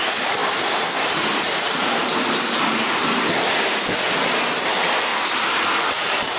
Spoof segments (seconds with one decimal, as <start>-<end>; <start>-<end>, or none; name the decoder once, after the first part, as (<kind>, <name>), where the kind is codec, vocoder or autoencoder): none